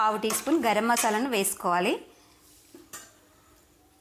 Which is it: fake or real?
real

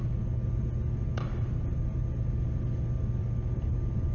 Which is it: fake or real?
real